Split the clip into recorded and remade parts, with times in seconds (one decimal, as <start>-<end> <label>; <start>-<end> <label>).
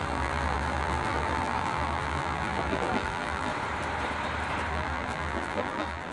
0.0-3.5 remade; 3.5-4.7 recorded; 4.7-6.1 remade